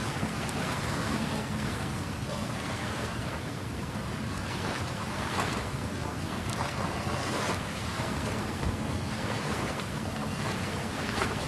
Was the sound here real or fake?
fake